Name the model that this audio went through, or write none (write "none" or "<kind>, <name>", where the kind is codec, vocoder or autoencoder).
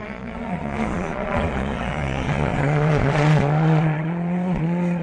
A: vocoder, Vocos